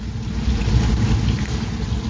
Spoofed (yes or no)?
no